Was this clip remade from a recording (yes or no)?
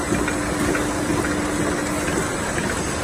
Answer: no